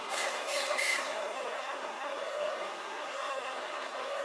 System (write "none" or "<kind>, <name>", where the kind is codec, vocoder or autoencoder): codec, SNAC